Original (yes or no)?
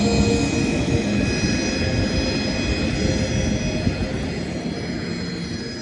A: yes